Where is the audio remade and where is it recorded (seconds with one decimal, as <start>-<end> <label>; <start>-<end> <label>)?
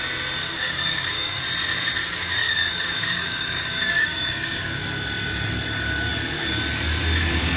0.0-0.4 recorded; 0.4-1.4 remade; 1.4-2.0 recorded; 2.0-4.8 remade; 4.8-7.6 recorded